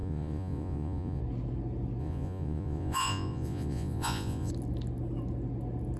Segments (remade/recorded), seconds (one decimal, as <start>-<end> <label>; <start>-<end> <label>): 0.0-1.2 remade; 1.2-2.0 recorded; 2.0-4.5 remade; 4.5-6.0 recorded